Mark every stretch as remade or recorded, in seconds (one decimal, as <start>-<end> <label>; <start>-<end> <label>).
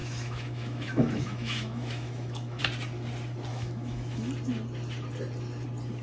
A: 0.0-2.6 remade; 2.6-3.5 recorded; 3.5-4.2 remade; 4.2-6.0 recorded